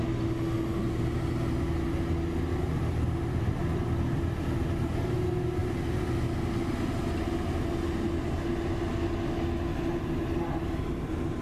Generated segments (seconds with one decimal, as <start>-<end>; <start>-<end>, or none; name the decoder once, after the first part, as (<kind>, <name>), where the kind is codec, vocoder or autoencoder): none